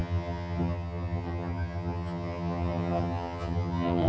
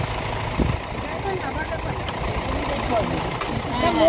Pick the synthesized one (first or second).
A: first